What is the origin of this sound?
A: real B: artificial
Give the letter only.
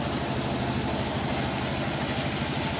A